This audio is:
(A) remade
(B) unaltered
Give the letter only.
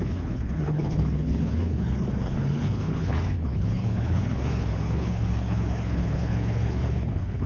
A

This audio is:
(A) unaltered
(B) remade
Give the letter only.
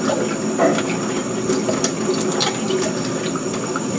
A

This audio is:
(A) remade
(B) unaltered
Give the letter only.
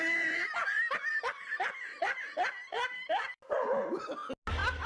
B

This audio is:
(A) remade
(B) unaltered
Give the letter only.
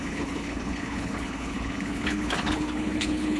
A